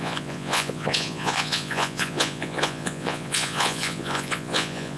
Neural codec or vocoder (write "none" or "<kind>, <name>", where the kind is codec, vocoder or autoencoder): vocoder, Vocos